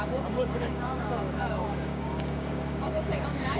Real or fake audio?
fake